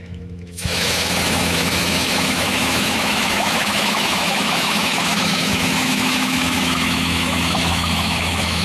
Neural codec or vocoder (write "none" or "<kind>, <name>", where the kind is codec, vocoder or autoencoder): autoencoder, DAC-VAE